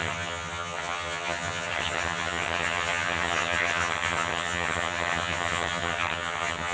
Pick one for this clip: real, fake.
fake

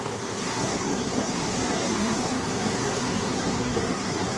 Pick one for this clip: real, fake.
fake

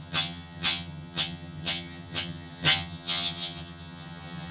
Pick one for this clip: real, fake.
fake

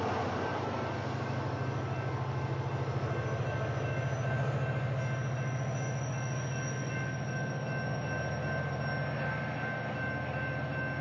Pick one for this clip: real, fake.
real